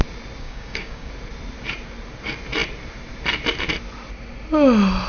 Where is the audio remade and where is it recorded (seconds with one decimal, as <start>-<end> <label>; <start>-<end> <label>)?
0.0-0.4 recorded; 0.4-1.1 remade; 1.1-5.1 recorded